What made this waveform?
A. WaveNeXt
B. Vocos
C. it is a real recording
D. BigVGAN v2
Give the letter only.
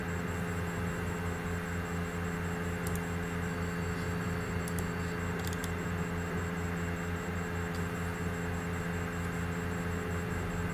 C